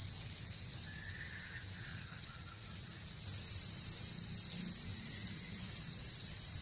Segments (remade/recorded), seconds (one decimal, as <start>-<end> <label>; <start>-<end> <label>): 0.0-1.9 recorded; 1.9-3.5 remade; 3.5-4.9 recorded; 4.9-6.6 remade